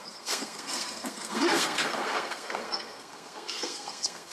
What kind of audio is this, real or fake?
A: fake